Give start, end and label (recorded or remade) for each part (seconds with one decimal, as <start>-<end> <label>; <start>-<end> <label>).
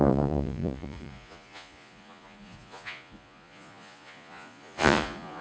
0.0-5.4 remade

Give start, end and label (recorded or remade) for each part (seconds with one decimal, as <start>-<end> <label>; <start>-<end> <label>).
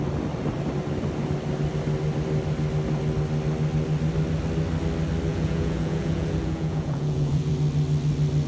0.0-5.3 recorded; 5.3-7.5 remade; 7.5-8.5 recorded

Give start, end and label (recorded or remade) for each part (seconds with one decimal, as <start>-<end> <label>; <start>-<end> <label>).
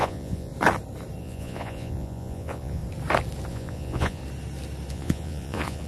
0.0-0.5 remade; 0.5-1.2 recorded; 1.2-2.8 remade; 2.8-3.5 recorded; 3.5-4.2 remade; 4.2-4.9 recorded; 4.9-5.9 remade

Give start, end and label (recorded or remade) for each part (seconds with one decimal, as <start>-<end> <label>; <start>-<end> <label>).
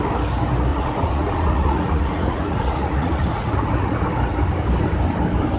0.0-0.7 recorded; 0.7-4.0 remade; 4.0-5.6 recorded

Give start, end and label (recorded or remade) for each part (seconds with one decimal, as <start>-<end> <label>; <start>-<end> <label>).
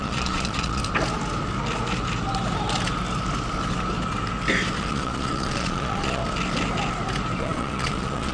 0.0-0.8 remade; 0.8-4.8 recorded; 4.8-6.2 remade; 6.2-7.4 recorded; 7.4-8.3 remade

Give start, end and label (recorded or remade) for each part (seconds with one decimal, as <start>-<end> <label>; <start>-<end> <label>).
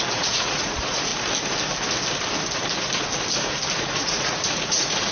0.0-1.1 remade; 1.1-3.8 recorded; 3.8-5.1 remade